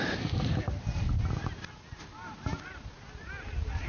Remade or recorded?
recorded